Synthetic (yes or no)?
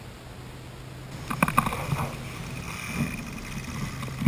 no